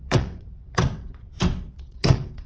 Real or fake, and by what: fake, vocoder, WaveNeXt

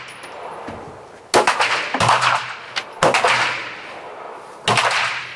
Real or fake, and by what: real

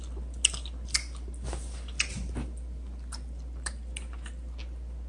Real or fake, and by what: real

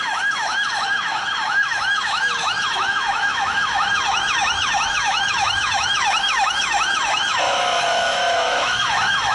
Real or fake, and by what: fake, autoencoder, DAC-VAE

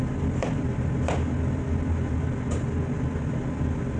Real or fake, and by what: real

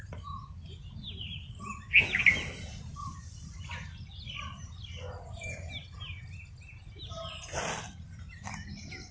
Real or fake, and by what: real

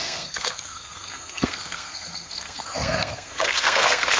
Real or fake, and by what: fake, codec, SNAC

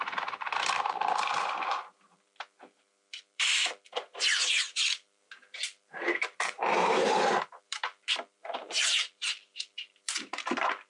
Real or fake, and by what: fake, vocoder, BigVGAN v2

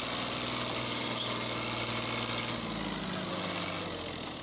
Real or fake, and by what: real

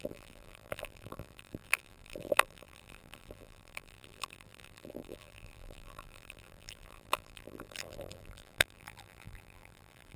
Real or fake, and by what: fake, vocoder, BigVGAN v2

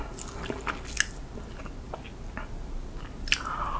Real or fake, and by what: real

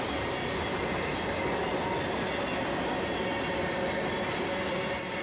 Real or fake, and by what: real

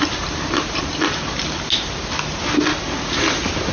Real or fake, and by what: real